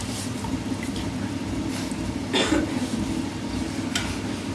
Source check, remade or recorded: recorded